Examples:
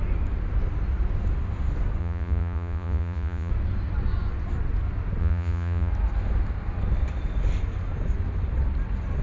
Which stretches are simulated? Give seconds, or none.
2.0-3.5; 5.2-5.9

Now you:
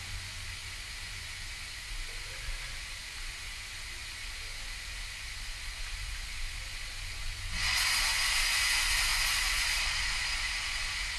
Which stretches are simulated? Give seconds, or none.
0.0-11.2

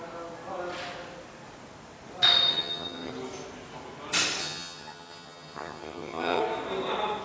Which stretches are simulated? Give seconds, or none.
2.5-3.1; 4.4-6.4